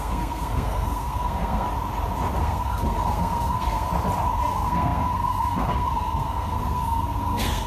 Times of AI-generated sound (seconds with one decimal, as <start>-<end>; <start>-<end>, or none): 0.0-1.7; 2.4-3.9; 4.5-7.7